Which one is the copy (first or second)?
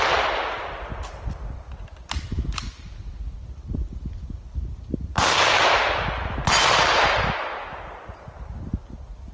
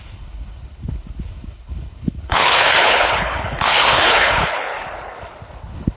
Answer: second